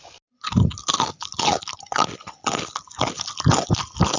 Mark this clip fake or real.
real